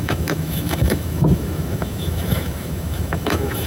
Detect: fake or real fake